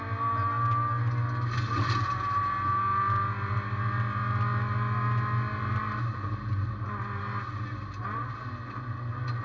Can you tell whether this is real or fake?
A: real